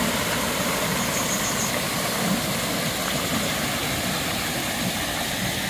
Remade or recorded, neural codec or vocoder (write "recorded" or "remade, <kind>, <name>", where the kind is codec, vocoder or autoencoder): recorded